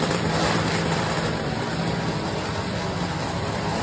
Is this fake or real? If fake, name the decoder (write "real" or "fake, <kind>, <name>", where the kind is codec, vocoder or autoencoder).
fake, vocoder, BigVGAN v2